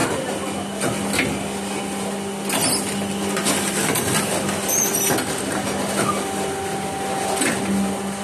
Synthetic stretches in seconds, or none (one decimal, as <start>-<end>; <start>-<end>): none